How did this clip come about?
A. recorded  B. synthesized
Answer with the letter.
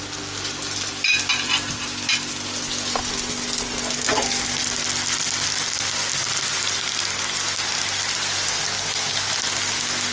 A